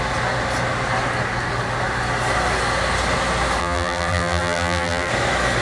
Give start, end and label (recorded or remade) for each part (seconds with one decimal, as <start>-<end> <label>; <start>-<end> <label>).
0.0-3.6 recorded; 3.6-5.1 remade; 5.1-5.6 recorded